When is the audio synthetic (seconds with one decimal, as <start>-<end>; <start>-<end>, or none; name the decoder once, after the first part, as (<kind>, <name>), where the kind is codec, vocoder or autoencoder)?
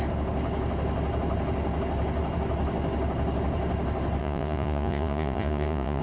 4.2-6.0 (vocoder, Vocos)